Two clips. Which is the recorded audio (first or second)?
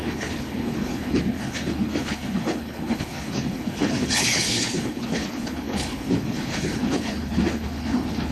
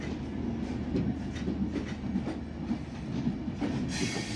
second